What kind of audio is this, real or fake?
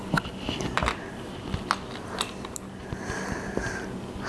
real